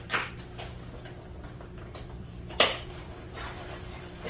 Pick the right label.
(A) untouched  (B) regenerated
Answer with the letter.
B